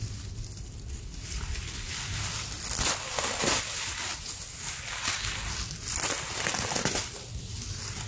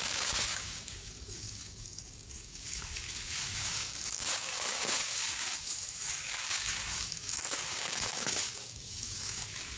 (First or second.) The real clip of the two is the first